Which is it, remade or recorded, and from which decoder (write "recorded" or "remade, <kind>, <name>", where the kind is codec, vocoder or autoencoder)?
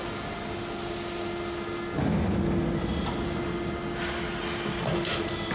recorded